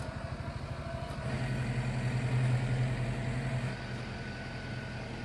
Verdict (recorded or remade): recorded